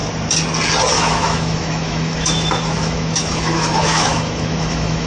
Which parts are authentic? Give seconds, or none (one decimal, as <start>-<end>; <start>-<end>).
0.0-1.0